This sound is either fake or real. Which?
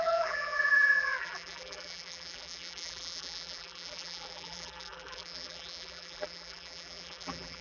fake